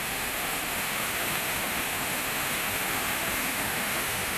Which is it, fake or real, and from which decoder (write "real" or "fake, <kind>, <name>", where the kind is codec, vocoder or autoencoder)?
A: fake, autoencoder, DAC-VAE